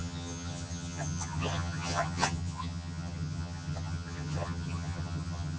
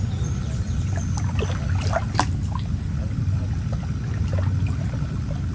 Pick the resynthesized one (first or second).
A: first